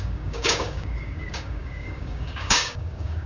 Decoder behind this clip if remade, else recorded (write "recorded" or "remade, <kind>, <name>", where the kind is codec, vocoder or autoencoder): remade, codec, DAC